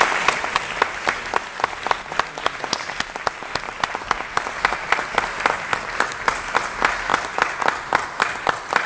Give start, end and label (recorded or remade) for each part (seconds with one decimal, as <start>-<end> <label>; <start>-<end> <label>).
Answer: 0.0-8.9 recorded